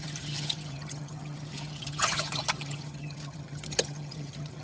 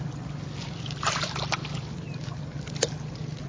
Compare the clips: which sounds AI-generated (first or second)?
first